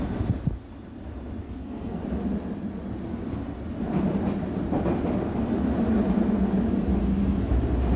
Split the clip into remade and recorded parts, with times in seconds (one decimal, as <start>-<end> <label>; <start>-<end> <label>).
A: 0.0-1.4 recorded; 1.4-2.0 remade; 2.0-8.0 recorded